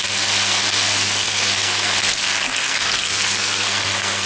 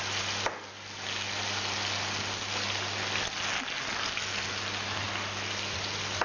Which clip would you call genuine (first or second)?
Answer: second